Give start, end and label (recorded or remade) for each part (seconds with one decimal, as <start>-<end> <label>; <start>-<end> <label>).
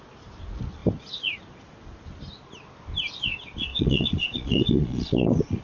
0.0-3.7 recorded; 3.7-5.6 remade